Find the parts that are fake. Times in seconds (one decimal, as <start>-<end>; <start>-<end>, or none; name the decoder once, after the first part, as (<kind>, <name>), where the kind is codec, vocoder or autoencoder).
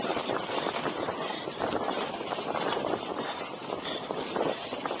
none